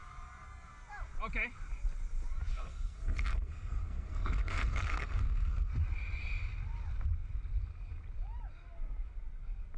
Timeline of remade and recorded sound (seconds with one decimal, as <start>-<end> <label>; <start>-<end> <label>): 0.0-2.5 recorded; 2.5-5.7 remade; 5.7-9.8 recorded